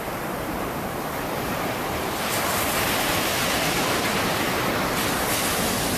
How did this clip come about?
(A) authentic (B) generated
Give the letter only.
A